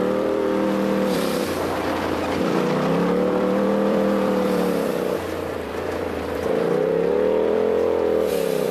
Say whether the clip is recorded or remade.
remade